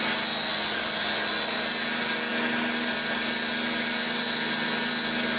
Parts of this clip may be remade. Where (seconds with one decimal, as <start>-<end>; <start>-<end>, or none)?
none